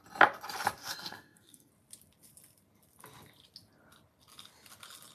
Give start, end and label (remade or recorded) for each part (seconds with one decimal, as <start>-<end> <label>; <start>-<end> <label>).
0.0-0.8 recorded; 0.8-1.7 remade; 1.7-5.1 recorded